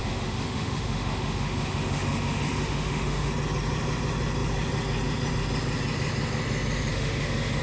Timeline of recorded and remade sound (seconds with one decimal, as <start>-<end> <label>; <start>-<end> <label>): 0.0-3.3 remade; 3.3-6.9 recorded; 6.9-7.6 remade